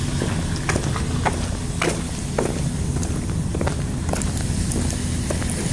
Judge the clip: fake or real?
real